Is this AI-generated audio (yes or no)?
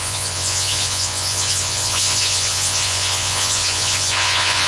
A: yes